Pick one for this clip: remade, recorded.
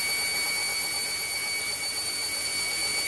recorded